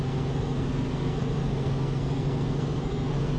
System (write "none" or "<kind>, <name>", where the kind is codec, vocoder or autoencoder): codec, SNAC